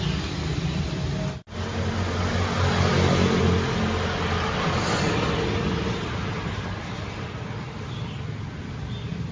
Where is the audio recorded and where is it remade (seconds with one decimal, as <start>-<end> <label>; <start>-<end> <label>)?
0.0-9.3 recorded